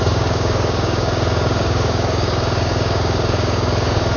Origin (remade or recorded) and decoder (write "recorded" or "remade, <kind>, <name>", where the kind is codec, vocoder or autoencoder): remade, codec, DAC